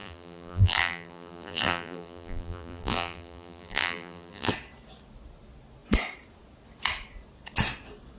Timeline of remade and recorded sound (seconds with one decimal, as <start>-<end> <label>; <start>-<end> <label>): 0.0-4.5 remade; 4.5-8.2 recorded